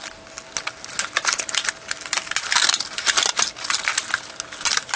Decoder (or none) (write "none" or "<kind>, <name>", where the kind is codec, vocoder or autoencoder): none